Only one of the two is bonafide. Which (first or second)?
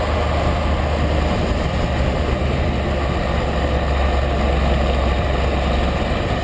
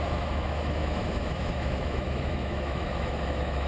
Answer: first